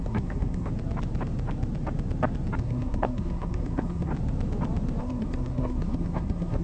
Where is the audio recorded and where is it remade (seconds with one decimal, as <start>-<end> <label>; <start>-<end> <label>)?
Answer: 0.0-0.7 remade; 0.7-2.6 recorded; 2.6-4.1 remade; 4.1-5.0 recorded; 5.0-6.6 remade